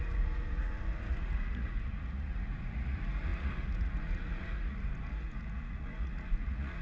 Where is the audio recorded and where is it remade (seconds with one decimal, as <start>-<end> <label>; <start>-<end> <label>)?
0.0-6.8 remade